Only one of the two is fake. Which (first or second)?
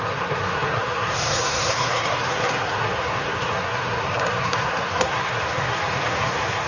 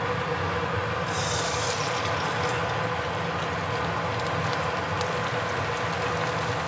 first